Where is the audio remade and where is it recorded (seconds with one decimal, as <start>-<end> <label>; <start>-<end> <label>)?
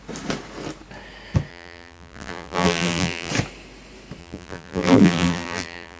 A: 0.0-1.5 recorded; 1.5-3.3 remade; 3.3-4.2 recorded; 4.2-6.0 remade